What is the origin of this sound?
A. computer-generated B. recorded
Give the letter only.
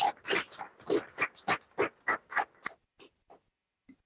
B